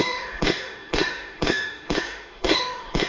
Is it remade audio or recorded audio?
remade